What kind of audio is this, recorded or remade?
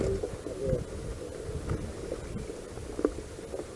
recorded